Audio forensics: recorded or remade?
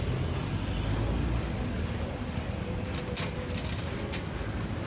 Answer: recorded